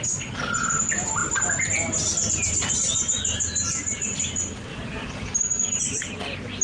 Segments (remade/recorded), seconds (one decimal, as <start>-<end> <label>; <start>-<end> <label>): 0.0-6.6 recorded